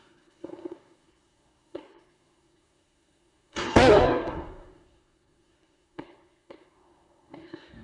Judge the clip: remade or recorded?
remade